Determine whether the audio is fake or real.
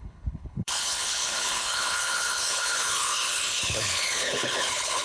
fake